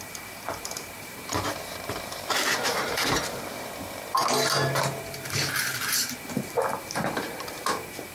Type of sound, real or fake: fake